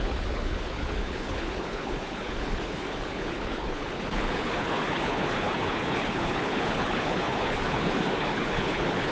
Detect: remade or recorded remade